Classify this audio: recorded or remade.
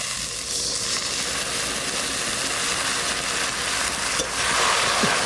recorded